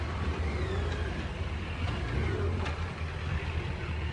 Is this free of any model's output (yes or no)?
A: yes